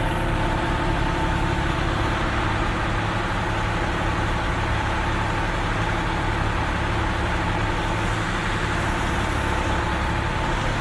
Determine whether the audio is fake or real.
real